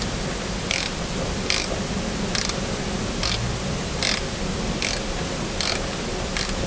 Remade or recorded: recorded